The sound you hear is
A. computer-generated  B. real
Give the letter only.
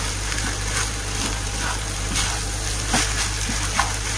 B